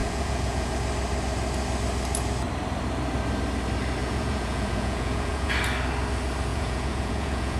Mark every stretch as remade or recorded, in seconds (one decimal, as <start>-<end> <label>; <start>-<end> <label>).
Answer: 0.0-0.7 remade; 0.7-4.0 recorded; 4.0-5.5 remade; 5.5-6.5 recorded; 6.5-7.6 remade